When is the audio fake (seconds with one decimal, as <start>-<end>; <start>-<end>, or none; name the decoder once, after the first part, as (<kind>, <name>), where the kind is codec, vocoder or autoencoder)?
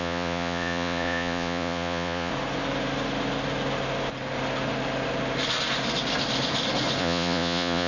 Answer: 0.0-2.3 (vocoder, Vocos); 7.0-7.9